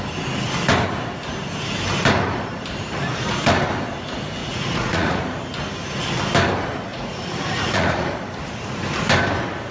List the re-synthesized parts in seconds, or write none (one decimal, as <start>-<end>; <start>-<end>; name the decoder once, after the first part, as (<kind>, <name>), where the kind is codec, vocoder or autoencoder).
4.4-5.2 (vocoder, Vocos); 6.9-8.1